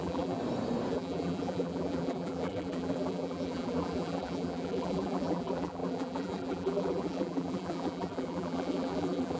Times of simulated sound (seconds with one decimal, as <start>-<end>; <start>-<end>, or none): 0.0-0.4; 0.9-9.4